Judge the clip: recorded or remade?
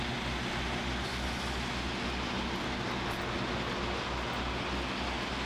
recorded